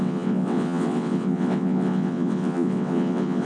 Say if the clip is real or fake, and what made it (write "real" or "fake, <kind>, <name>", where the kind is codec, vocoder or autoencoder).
fake, vocoder, WaveNeXt